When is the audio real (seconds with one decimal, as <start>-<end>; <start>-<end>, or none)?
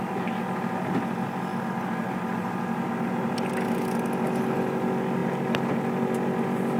0.0-6.8